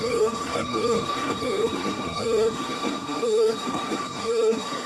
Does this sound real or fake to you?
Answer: fake